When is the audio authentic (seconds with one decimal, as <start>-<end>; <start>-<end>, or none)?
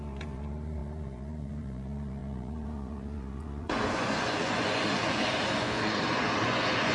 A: none